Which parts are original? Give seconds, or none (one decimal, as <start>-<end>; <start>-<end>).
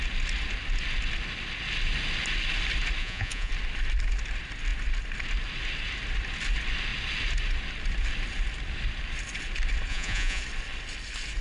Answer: 0.0-3.0; 3.5-9.9; 10.4-11.4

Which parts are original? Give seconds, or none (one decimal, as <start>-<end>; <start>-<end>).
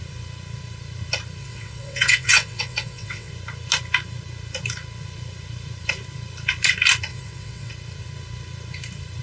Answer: 0.0-1.4; 3.3-7.1; 7.7-9.2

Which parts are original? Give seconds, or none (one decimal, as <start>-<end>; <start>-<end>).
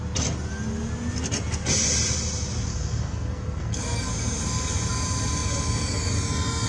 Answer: 0.0-2.7; 3.8-6.7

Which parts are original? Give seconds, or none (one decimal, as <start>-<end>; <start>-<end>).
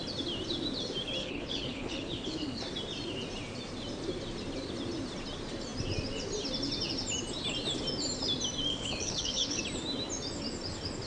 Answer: 0.0-1.2; 2.6-8.7; 9.6-11.1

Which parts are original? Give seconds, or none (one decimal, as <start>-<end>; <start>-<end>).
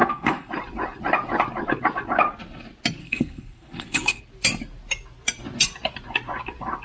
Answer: 0.5-3.0; 4.2-6.8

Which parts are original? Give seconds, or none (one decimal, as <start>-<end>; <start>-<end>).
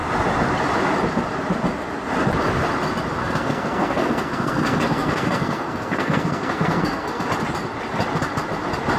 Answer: 0.0-3.2; 7.3-9.0